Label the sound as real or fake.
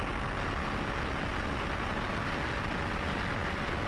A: real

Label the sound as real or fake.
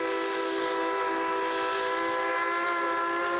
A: real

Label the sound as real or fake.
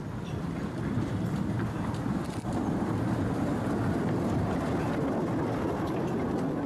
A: real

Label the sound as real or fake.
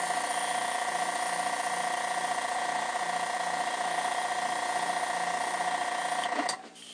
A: real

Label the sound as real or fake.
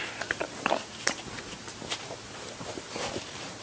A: fake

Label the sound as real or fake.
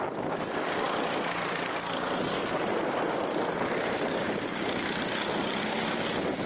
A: real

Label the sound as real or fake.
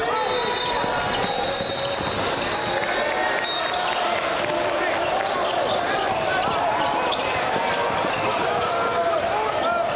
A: real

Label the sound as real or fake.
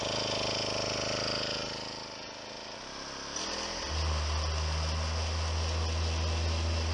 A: real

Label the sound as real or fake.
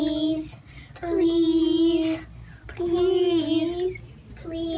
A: real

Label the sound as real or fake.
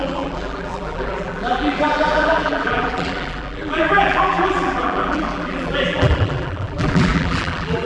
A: fake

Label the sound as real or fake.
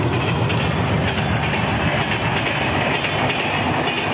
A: real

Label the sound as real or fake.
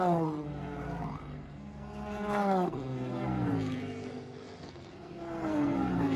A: fake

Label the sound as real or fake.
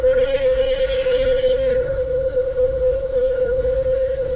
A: fake